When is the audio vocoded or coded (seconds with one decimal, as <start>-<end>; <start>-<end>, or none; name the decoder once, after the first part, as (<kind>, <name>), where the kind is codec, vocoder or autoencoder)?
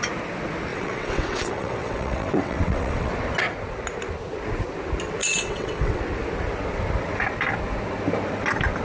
0.7-3.1 (vocoder, WaveNeXt); 5.2-6.0